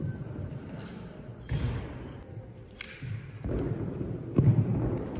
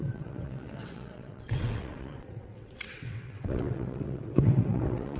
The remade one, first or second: second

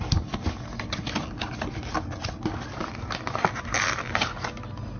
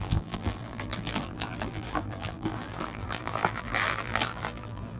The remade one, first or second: second